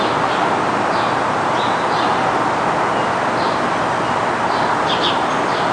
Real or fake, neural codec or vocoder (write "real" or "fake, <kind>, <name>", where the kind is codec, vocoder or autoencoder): real